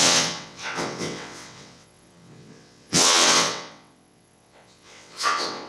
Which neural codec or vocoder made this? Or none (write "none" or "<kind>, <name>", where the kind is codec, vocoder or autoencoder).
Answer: vocoder, WaveNeXt